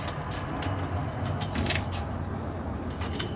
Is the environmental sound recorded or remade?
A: recorded